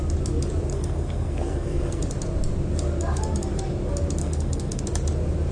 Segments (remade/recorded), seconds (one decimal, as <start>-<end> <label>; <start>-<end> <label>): 0.0-0.7 recorded; 0.7-2.0 remade; 2.0-4.2 recorded; 4.2-4.8 remade; 4.8-5.5 recorded